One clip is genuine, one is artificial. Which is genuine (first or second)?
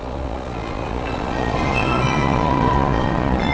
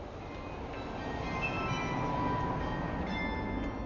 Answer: second